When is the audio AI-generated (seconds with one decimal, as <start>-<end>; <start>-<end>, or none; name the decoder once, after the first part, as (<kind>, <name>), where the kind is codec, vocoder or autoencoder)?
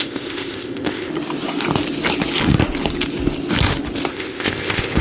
0.0-1.1 (codec, ZipCodec); 4.1-5.0